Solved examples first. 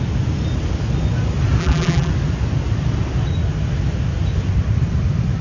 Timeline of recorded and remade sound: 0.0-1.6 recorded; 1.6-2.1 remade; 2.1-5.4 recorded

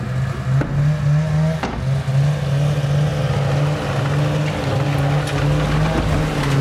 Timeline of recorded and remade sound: 0.0-6.6 recorded

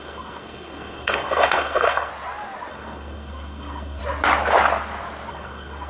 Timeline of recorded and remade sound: 0.0-2.1 remade; 2.1-2.7 recorded; 2.7-4.0 remade; 4.0-5.3 recorded; 5.3-5.9 remade

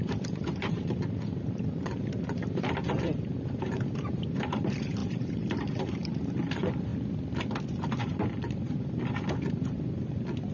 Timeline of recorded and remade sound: 0.0-6.9 remade; 6.9-7.7 recorded; 7.7-10.5 remade

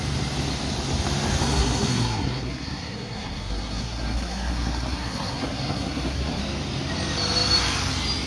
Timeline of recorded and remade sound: 0.0-1.4 recorded; 1.4-6.4 remade; 6.4-8.3 recorded